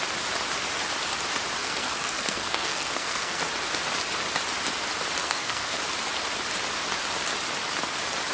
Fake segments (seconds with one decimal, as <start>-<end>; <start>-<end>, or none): 1.6-3.5; 5.2-5.8